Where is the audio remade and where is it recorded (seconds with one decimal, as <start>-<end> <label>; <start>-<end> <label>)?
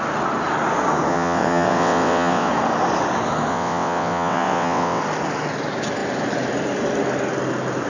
0.0-1.1 recorded; 1.1-2.5 remade; 2.5-3.5 recorded; 3.5-5.0 remade; 5.0-7.9 recorded